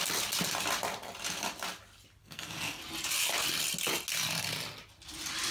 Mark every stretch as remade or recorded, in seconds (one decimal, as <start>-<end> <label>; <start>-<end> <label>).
0.0-2.2 recorded; 2.2-2.8 remade; 2.8-5.5 recorded

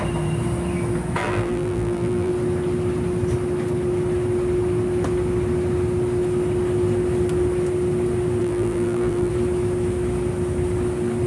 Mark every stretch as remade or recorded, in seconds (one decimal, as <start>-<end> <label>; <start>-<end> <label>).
0.0-1.2 recorded; 1.2-2.3 remade; 2.3-8.4 recorded; 8.4-9.3 remade; 9.3-11.3 recorded

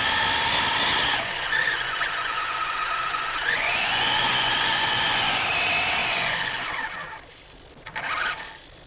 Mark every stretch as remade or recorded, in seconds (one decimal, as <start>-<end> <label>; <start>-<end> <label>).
0.0-1.1 recorded; 1.1-5.4 remade; 5.4-6.0 recorded; 6.0-6.7 remade; 6.7-8.9 recorded